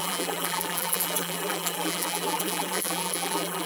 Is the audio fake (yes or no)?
yes